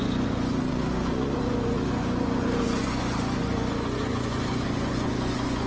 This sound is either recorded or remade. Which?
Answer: remade